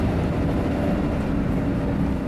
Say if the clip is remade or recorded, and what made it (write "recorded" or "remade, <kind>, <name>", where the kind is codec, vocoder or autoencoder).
recorded